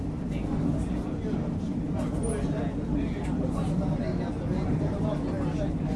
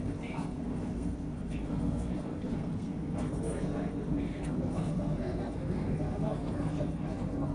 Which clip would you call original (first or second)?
first